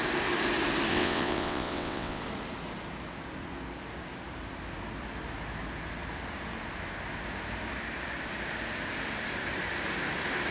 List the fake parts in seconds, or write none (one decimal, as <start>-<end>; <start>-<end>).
0.9-2.2

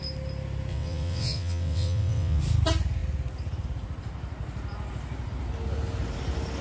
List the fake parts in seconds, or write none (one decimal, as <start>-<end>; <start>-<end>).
0.7-2.4

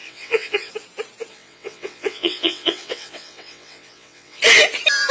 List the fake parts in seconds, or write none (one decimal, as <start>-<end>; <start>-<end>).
0.0-0.7; 1.3-4.4

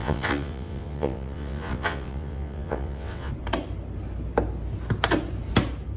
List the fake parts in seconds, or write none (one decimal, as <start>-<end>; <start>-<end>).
0.0-3.3

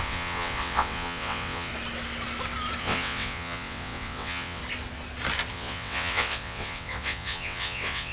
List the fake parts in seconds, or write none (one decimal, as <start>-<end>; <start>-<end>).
0.0-1.7; 2.8-4.6; 5.5-8.1